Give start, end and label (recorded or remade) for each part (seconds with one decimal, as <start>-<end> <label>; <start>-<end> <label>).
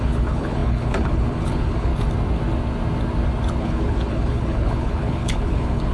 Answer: 0.0-1.9 remade; 1.9-3.6 recorded; 3.6-5.9 remade